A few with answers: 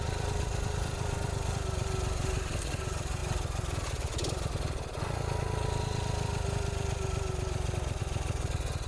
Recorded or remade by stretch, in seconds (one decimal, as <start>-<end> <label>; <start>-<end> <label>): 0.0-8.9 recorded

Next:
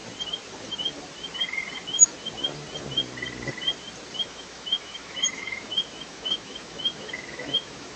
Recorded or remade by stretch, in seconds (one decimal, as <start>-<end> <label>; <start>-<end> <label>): 0.0-4.2 recorded; 4.2-8.0 remade

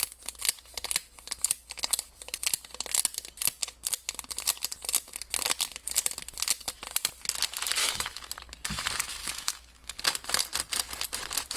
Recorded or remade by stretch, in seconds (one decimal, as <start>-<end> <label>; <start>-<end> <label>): 0.0-7.8 recorded; 7.8-8.3 remade; 8.3-9.2 recorded; 9.2-10.0 remade; 10.0-11.6 recorded

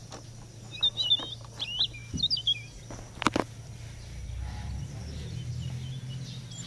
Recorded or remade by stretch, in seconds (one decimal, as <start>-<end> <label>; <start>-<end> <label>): 0.0-6.7 recorded